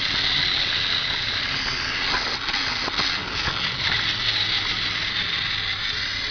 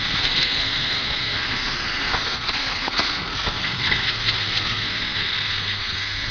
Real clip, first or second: first